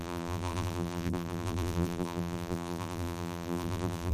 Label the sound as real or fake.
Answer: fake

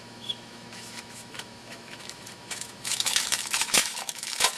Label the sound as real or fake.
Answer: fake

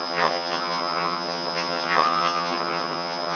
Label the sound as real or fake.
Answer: fake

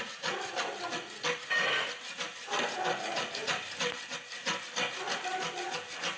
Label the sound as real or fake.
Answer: real